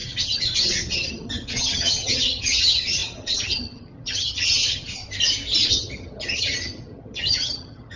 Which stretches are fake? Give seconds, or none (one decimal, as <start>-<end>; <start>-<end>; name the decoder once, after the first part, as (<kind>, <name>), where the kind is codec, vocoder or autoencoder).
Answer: 0.0-5.0 (vocoder, HiFi-GAN); 5.7-8.0